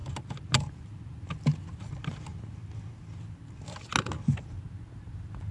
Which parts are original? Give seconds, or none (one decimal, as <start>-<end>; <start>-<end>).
0.0-5.5